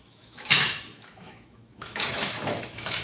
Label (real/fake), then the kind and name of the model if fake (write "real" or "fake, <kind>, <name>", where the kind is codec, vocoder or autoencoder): fake, autoencoder, DAC-VAE